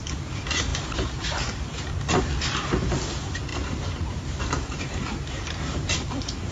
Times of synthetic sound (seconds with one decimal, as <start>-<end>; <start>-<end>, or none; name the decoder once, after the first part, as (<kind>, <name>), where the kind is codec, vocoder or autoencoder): 3.5-5.9 (vocoder, BigVGAN v2)